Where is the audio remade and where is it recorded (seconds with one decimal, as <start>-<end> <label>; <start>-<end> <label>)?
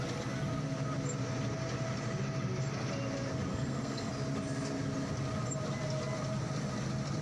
0.0-3.5 recorded; 3.5-4.1 remade; 4.1-7.2 recorded